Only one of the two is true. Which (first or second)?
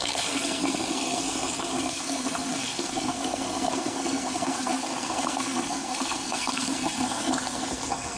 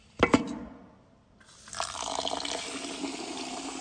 second